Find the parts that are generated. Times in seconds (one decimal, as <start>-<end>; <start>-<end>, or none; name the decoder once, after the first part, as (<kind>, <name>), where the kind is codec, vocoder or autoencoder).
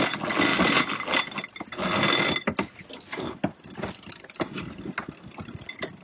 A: none